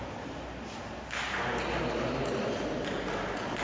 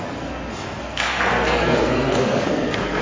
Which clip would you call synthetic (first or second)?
second